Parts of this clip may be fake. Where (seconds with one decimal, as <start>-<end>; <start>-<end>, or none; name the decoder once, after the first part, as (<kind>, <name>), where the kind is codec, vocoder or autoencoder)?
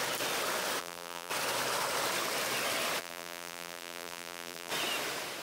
0.8-1.3 (vocoder, BigVGAN v2); 3.0-4.7